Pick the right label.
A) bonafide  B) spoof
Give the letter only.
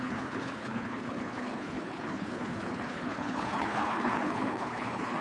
B